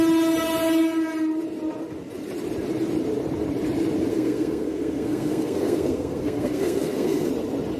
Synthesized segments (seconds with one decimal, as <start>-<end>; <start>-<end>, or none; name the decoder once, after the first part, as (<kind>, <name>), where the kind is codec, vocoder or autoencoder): 4.1-7.3 (codec, SNAC)